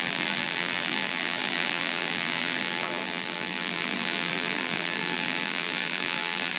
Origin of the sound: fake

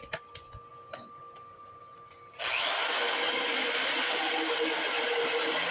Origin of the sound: real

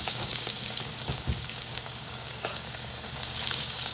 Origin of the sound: fake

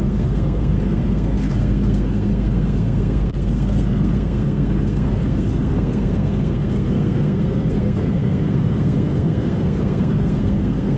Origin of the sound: fake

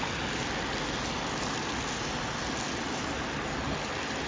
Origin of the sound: real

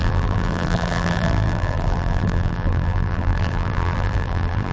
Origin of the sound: fake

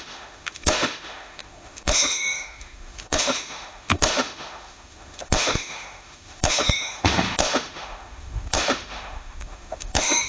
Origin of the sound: fake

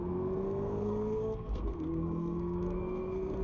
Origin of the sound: fake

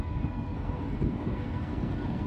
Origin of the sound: fake